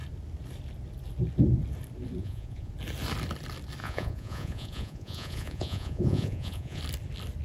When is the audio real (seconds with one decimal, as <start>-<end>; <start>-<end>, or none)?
0.0-2.2; 2.7-3.8; 6.8-7.4